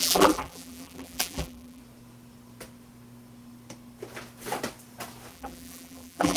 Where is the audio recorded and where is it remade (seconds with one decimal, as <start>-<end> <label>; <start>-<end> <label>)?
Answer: 0.0-1.8 remade; 1.8-5.3 recorded; 5.3-6.4 remade